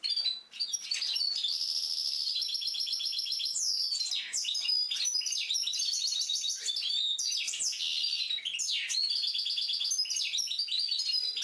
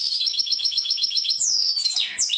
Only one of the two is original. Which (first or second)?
first